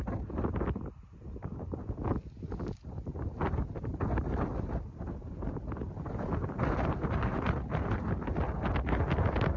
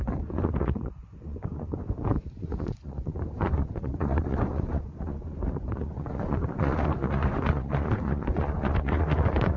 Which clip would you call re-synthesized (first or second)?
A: second